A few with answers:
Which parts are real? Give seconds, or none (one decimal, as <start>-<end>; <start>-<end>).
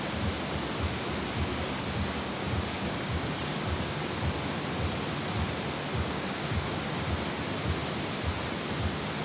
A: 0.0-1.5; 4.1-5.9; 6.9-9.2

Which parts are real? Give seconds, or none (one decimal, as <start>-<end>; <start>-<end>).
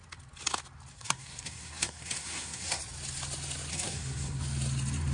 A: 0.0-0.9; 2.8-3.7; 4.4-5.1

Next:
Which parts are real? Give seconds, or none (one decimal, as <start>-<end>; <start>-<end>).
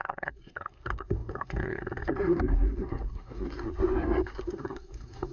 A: none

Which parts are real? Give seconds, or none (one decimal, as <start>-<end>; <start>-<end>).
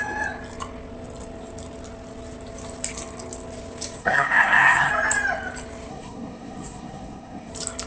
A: 0.0-4.0; 4.9-5.9; 7.5-7.9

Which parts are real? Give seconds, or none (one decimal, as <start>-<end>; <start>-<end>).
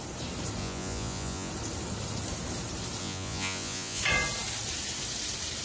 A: 0.0-0.6; 1.5-3.0; 4.0-5.6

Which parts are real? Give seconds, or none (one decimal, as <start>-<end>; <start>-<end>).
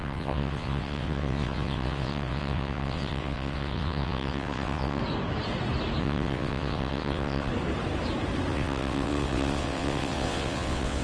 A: 5.0-6.0; 7.5-8.5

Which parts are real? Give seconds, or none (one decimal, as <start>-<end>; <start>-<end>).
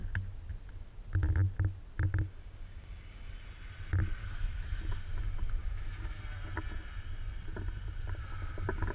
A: 0.0-4.2; 4.8-5.6; 6.2-8.9